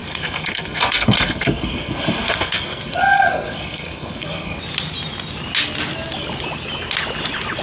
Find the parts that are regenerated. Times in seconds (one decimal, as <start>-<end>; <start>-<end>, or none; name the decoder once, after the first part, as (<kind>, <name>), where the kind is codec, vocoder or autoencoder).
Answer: 0.0-4.6 (codec, SNAC)